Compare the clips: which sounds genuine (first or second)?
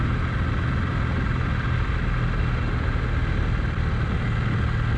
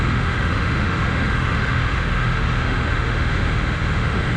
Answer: first